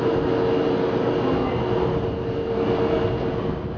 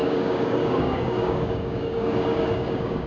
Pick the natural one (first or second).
first